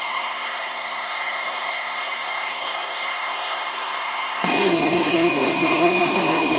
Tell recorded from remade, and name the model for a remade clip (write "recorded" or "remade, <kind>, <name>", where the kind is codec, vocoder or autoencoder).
remade, codec, SNAC